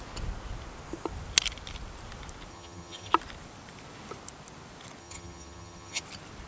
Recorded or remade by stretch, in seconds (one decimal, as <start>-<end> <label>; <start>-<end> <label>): 0.0-2.5 recorded; 2.5-3.1 remade; 3.1-5.0 recorded; 5.0-6.0 remade; 6.0-6.5 recorded